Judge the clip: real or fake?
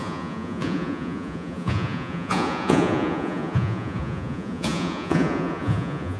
fake